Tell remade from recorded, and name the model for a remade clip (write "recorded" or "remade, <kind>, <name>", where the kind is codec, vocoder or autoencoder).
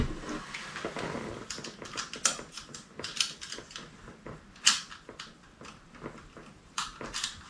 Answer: recorded